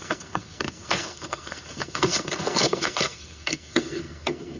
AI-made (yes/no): yes